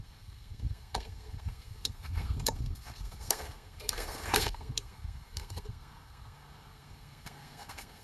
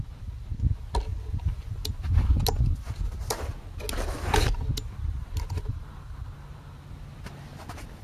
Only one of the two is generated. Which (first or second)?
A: first